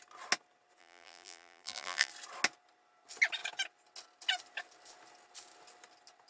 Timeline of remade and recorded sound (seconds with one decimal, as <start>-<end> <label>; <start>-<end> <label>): 0.0-0.8 recorded; 0.8-2.1 remade; 2.1-6.3 recorded